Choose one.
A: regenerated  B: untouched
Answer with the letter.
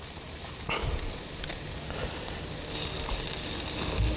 B